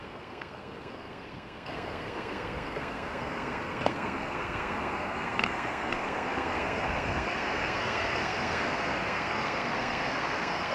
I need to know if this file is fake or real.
fake